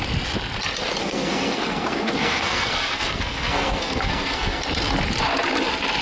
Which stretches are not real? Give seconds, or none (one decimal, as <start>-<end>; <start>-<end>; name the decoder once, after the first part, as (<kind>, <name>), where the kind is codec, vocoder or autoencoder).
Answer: 1.0-4.6 (codec, SNAC)